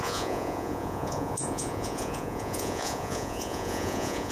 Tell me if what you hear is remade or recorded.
remade